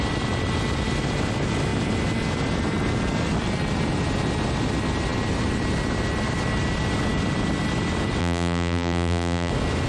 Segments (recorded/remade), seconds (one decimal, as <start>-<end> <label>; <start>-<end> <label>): 0.0-8.2 recorded; 8.2-9.5 remade; 9.5-9.9 recorded